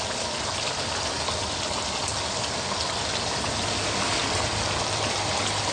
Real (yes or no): yes